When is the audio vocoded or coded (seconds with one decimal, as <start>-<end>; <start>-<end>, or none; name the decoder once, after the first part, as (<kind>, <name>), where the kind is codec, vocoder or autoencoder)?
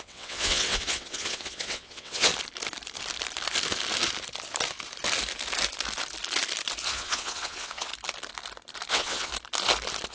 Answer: 0.0-2.3 (vocoder, WaveNeXt); 6.8-7.9; 8.9-9.3